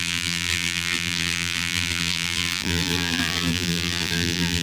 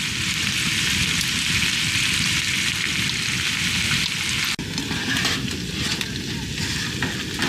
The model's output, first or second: first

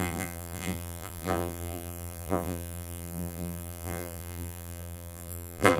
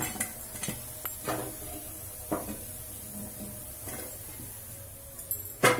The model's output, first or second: first